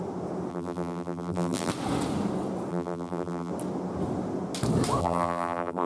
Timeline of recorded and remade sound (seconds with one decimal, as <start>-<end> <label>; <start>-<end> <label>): 0.0-0.5 recorded; 0.5-1.7 remade; 1.7-2.7 recorded; 2.7-3.5 remade; 3.5-5.0 recorded; 5.0-5.9 remade